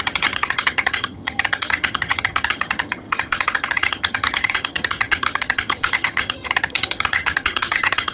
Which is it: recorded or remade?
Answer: remade